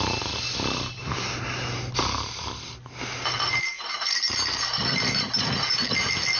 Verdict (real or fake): real